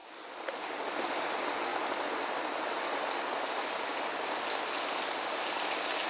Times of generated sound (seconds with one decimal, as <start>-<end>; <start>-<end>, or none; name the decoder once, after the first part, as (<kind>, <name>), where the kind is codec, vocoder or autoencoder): none

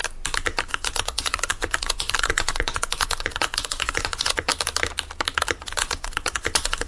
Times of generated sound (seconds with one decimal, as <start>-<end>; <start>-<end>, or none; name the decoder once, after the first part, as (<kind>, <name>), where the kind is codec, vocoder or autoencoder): 0.7-4.5 (vocoder, Vocos); 5.6-6.9

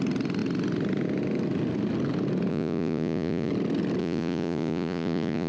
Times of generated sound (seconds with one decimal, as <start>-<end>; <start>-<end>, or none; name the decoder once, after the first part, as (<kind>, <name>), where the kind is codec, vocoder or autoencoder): 2.5-3.5 (vocoder, Vocos); 4.0-5.5

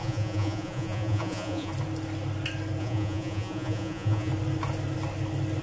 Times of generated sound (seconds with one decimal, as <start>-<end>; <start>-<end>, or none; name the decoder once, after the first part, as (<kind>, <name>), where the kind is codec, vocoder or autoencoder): 0.0-1.7 (vocoder, Vocos); 2.8-4.3

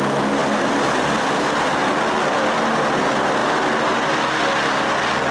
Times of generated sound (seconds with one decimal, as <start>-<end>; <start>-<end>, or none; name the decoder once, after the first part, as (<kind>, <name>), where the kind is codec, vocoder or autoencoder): none

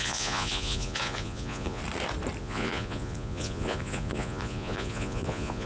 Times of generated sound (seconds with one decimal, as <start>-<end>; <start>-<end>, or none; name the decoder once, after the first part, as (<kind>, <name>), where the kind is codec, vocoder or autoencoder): 0.0-1.8 (vocoder, Vocos); 2.4-5.7

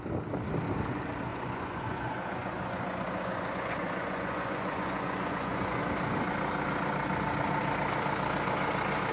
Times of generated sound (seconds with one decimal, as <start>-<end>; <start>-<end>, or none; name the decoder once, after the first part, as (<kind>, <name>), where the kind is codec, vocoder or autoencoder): 1.3-5.8 (vocoder, Vocos)

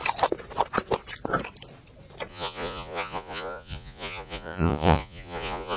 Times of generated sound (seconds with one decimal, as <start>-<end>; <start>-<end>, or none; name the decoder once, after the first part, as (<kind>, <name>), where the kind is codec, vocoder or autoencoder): 2.3-5.8 (vocoder, Vocos)